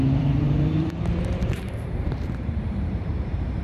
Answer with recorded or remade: remade